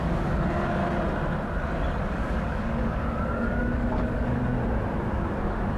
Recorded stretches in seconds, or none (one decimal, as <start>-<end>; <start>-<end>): 0.8-2.0; 4.5-5.1